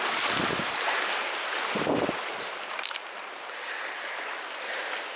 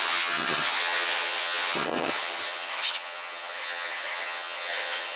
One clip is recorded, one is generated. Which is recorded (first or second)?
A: first